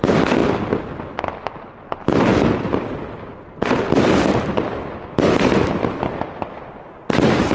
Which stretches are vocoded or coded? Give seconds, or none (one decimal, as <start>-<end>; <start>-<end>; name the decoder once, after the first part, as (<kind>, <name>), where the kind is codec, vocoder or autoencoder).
none